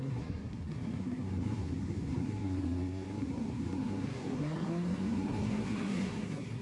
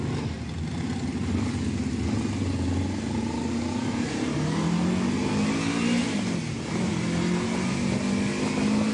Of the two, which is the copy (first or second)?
first